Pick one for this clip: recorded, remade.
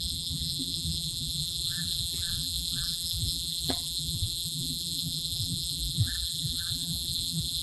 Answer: remade